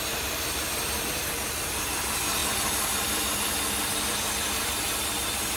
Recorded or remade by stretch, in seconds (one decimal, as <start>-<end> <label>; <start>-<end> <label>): 0.0-5.6 recorded